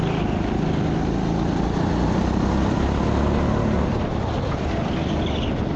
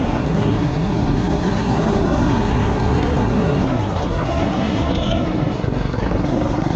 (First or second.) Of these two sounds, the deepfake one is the second